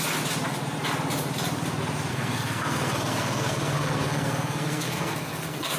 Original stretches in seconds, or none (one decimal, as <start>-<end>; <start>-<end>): 0.0-2.1